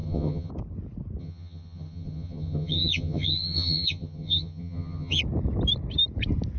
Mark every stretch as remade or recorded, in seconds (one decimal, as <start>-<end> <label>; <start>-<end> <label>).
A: 0.0-0.5 remade; 0.5-1.2 recorded; 1.2-5.2 remade; 5.2-6.6 recorded